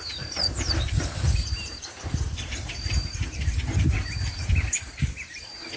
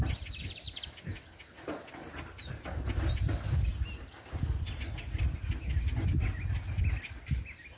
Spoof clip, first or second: first